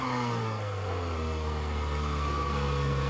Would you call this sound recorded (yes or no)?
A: no